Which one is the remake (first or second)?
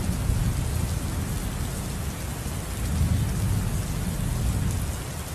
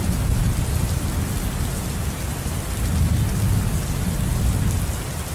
second